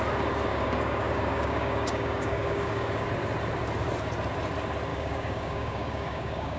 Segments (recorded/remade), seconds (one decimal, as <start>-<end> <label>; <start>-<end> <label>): 0.0-0.5 recorded; 0.5-3.1 remade; 3.1-4.9 recorded; 4.9-6.6 remade